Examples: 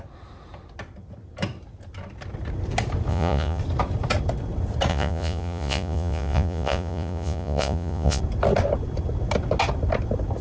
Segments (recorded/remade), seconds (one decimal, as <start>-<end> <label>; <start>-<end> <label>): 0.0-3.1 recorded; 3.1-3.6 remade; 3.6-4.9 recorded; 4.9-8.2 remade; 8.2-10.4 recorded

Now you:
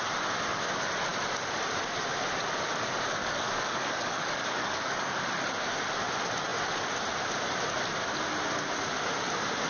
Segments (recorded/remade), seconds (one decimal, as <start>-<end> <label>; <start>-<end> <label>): 0.0-3.2 recorded; 3.2-5.2 remade; 5.2-9.7 recorded

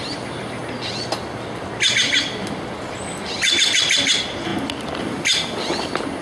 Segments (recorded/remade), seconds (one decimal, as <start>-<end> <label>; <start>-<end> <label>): 0.0-6.2 recorded